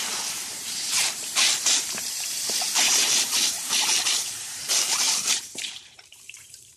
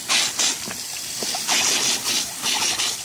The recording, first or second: second